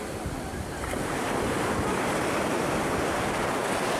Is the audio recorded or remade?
recorded